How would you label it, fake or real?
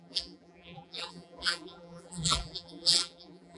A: fake